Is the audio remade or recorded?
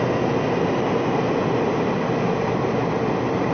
recorded